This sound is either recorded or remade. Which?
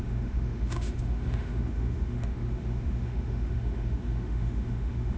remade